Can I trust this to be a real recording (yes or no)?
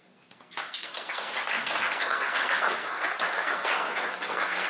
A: no